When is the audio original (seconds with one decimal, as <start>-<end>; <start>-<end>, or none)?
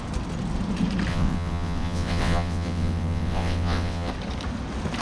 0.0-1.1; 4.1-5.0